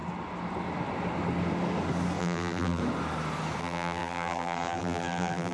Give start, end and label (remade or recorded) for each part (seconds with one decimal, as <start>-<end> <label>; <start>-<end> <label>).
0.0-2.2 recorded; 2.2-2.8 remade; 2.8-3.6 recorded; 3.6-5.5 remade